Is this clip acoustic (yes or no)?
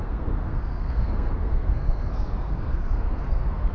no